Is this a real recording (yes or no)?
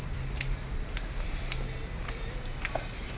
yes